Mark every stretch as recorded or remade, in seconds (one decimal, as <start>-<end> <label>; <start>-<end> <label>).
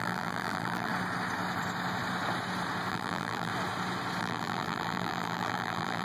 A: 0.0-0.9 remade; 0.9-2.9 recorded; 2.9-3.5 remade; 3.5-4.2 recorded; 4.2-6.0 remade